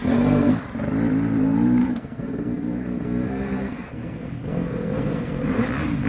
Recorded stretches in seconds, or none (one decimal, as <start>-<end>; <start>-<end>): 0.6-1.8; 5.4-6.1